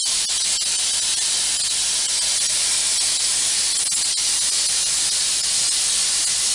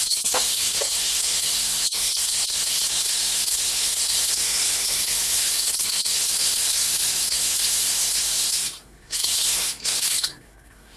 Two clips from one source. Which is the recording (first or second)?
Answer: first